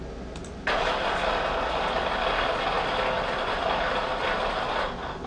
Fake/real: real